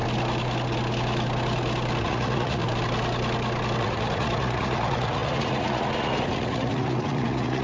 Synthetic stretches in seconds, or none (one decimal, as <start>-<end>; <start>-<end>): 2.0-2.6; 3.8-7.6